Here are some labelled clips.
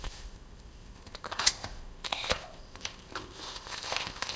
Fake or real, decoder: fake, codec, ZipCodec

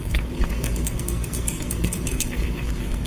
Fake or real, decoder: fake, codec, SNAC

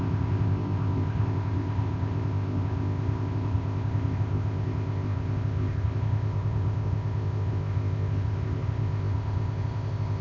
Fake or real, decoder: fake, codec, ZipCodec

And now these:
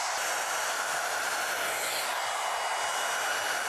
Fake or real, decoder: real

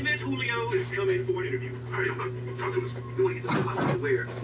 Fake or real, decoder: real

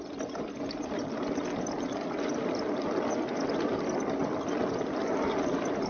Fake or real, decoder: real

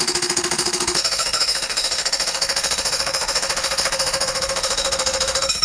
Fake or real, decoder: fake, autoencoder, DAC-VAE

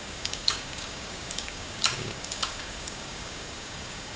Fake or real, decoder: fake, codec, DAC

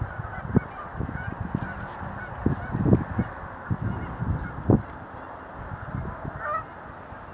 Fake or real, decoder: real